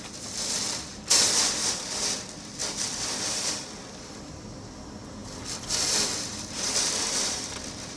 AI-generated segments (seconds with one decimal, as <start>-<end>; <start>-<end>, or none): none